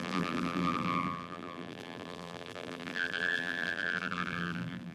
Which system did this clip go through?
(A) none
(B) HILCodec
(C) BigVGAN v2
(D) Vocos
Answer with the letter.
C